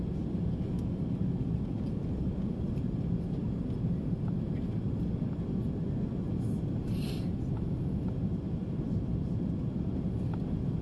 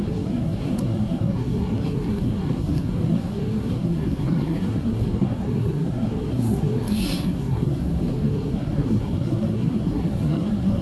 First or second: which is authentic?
first